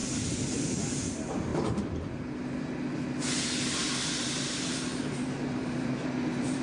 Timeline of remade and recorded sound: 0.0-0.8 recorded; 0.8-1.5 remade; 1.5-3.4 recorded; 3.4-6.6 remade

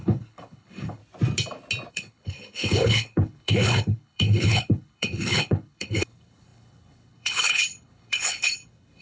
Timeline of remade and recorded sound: 0.0-1.0 remade; 1.0-1.9 recorded; 1.9-9.0 remade

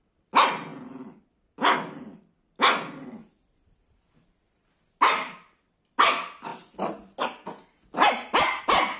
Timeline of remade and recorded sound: 0.0-9.0 recorded

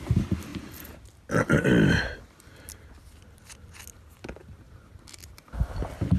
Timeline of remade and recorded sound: 0.0-6.2 recorded

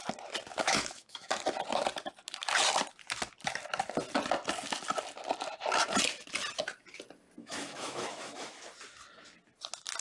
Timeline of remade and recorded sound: 0.0-0.5 recorded; 0.5-1.3 remade; 1.3-7.4 recorded; 7.4-8.6 remade; 8.6-10.0 recorded

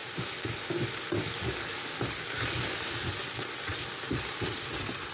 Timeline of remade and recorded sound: 0.0-3.1 recorded; 3.1-3.8 remade; 3.8-4.4 recorded; 4.4-5.1 remade

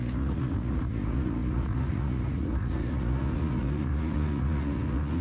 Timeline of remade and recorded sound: 0.0-5.2 remade

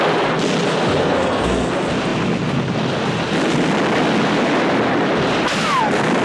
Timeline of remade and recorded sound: 0.0-1.0 recorded; 1.0-1.7 remade; 1.7-6.2 recorded